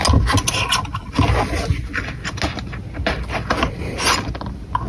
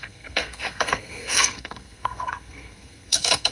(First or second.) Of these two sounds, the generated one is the second